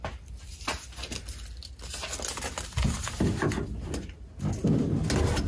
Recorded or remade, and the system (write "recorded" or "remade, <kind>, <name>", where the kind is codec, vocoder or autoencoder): recorded